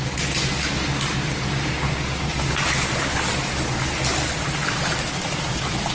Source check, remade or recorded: recorded